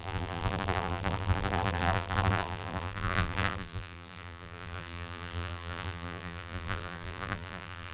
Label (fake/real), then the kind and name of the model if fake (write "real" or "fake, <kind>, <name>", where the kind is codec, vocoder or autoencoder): fake, vocoder, BigVGAN v2